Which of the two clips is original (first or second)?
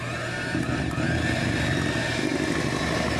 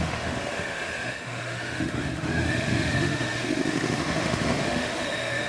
first